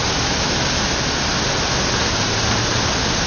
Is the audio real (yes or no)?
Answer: yes